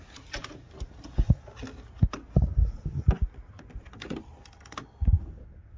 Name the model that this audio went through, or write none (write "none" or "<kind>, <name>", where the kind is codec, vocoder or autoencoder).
none